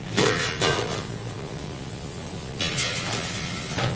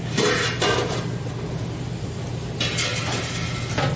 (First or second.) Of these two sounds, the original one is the second